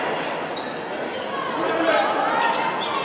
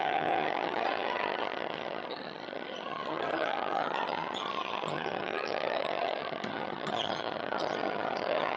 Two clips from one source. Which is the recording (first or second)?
first